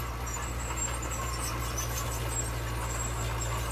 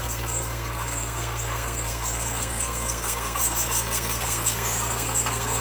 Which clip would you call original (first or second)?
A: first